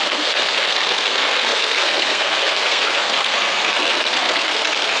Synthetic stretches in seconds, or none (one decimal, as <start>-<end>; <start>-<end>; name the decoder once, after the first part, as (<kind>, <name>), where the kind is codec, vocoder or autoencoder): 0.0-5.0 (codec, SNAC)